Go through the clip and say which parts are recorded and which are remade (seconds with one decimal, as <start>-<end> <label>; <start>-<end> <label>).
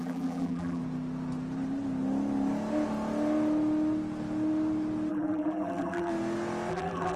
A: 0.0-0.8 remade; 0.8-5.1 recorded; 5.1-6.1 remade; 6.1-6.7 recorded; 6.7-7.2 remade